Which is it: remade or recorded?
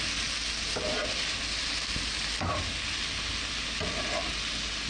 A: recorded